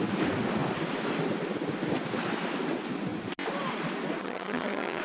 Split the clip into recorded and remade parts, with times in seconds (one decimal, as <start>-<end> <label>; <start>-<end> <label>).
0.0-4.2 recorded; 4.2-5.0 remade